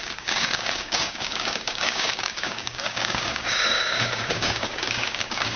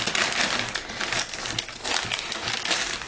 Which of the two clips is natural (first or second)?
second